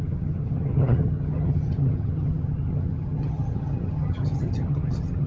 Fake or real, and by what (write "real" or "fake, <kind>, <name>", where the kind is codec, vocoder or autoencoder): fake, vocoder, HiFi-GAN